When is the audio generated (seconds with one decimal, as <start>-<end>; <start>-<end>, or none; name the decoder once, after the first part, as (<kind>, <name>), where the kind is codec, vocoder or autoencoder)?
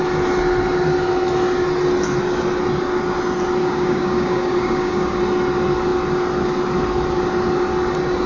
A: 3.6-5.2 (codec, DAC)